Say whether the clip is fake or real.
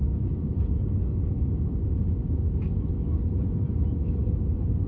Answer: real